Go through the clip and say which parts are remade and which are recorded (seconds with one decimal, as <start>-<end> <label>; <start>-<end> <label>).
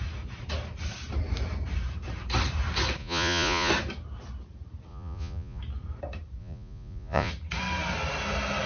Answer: 0.0-3.0 recorded; 3.0-3.7 remade; 3.7-4.9 recorded; 4.9-5.6 remade; 5.6-6.4 recorded; 6.4-7.3 remade; 7.3-8.7 recorded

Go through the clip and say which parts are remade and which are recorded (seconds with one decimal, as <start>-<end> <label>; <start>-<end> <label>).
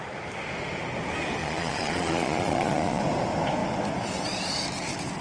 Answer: 0.0-1.4 recorded; 1.4-3.0 remade; 3.0-5.2 recorded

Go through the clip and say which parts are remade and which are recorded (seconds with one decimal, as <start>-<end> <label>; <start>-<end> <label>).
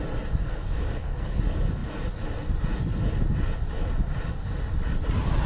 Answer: 0.0-0.4 recorded; 0.4-1.4 remade; 1.4-5.5 recorded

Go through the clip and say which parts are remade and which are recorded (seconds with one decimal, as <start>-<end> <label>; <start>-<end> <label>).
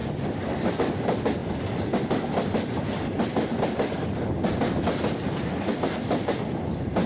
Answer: 0.0-7.1 recorded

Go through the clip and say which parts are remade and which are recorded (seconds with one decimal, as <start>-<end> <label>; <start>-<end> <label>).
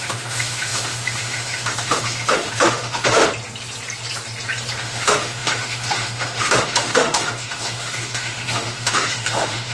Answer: 0.0-3.3 remade; 3.3-4.8 recorded; 4.8-9.7 remade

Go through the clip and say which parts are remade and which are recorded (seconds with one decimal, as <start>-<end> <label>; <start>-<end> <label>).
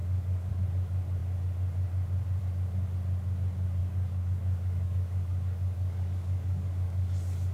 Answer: 0.0-0.5 remade; 0.5-3.8 recorded; 3.8-7.1 remade; 7.1-7.5 recorded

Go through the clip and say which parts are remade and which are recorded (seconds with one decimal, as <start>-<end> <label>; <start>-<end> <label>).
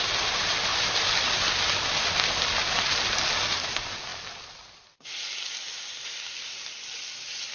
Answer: 0.0-7.5 recorded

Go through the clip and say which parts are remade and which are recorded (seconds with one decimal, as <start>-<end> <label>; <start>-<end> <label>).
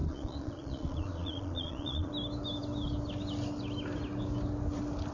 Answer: 0.0-2.1 remade; 2.1-5.1 recorded